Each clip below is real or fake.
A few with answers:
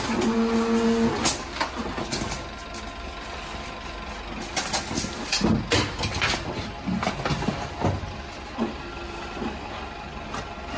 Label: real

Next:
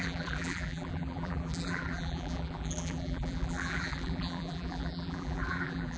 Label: fake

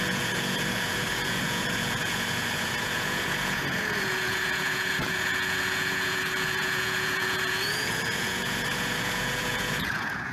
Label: fake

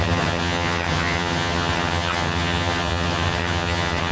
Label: fake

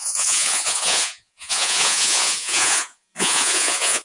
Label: fake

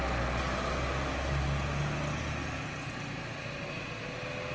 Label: real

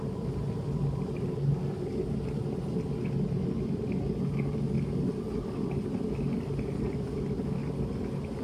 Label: real